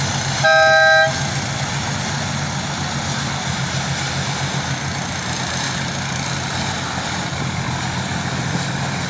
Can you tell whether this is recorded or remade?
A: recorded